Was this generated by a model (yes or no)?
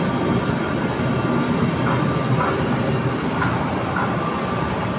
no